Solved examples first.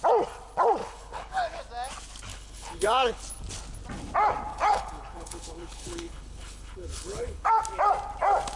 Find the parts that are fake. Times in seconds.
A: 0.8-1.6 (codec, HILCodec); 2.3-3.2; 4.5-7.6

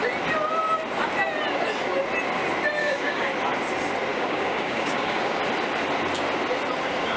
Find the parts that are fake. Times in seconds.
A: 2.8-3.3 (codec, DAC); 4.1-5.4

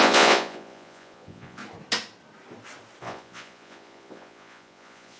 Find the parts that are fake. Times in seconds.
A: 0.0-1.6 (vocoder, Vocos); 3.0-5.2

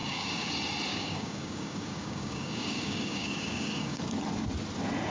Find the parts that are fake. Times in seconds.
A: 0.0-0.5 (codec, DAC); 0.9-4.0

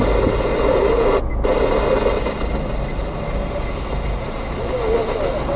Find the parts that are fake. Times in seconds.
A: none